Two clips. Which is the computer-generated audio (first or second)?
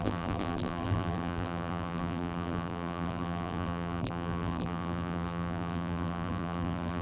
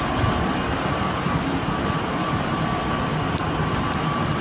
first